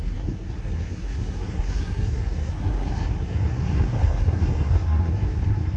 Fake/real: fake